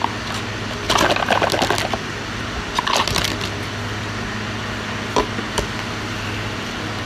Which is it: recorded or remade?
recorded